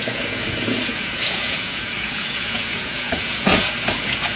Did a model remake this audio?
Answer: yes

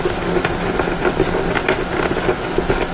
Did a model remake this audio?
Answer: no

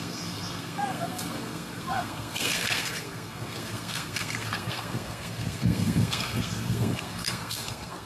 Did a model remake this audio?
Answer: yes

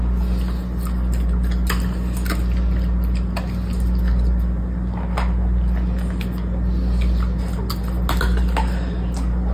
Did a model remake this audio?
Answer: no